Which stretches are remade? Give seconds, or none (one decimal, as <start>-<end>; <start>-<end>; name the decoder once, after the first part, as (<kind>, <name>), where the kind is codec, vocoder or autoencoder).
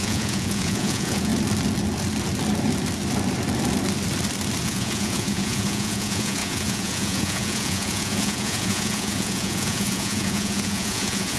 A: 0.0-1.3 (vocoder, Vocos); 4.6-11.4